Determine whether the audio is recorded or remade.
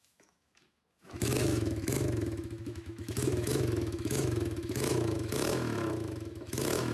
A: remade